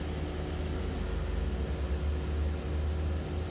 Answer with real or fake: real